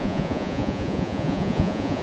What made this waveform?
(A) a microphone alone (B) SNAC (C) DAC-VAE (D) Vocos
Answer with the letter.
D